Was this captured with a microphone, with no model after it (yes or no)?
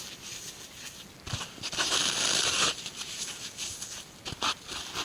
no